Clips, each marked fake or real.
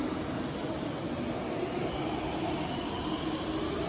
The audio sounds real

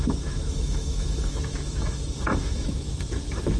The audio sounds fake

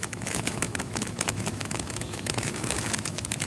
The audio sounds fake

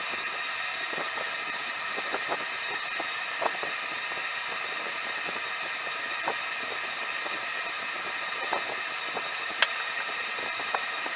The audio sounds real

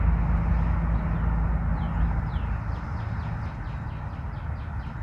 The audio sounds real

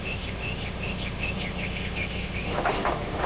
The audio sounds fake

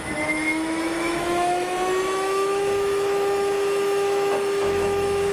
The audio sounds fake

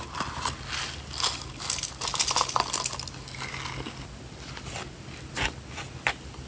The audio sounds real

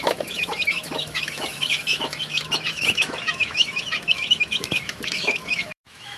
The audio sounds fake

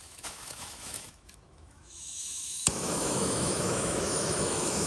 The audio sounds fake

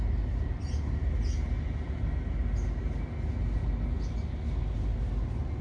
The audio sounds real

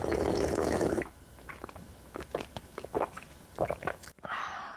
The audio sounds fake